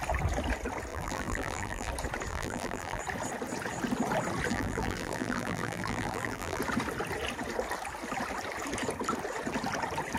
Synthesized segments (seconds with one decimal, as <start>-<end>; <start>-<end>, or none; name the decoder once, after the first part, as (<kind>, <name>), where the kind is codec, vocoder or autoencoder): 0.9-1.9 (vocoder, BigVGAN v2); 2.3-3.0; 4.5-6.6